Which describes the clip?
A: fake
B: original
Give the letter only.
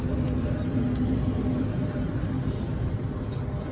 B